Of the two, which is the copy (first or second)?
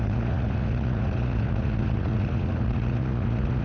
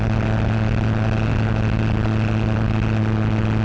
first